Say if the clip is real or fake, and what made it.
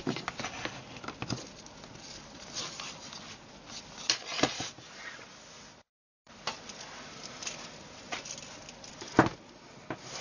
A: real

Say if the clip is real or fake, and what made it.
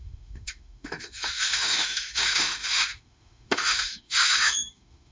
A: fake, autoencoder, DAC-VAE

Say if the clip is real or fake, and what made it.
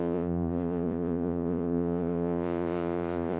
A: fake, vocoder, Vocos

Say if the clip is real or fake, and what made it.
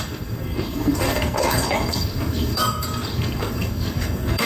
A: fake, codec, SNAC